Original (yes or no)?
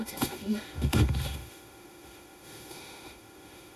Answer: no